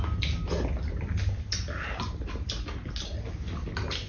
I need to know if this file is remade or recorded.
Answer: recorded